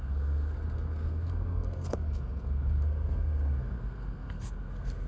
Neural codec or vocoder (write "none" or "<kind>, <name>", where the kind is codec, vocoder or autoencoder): codec, SNAC